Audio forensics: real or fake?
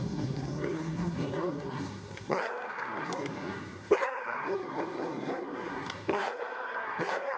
fake